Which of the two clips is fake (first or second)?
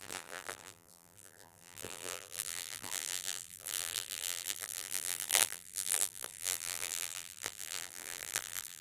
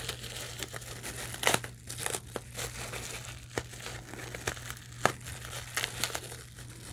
first